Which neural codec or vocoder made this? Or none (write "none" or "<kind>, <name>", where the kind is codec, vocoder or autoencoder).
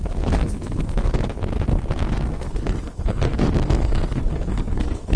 codec, SNAC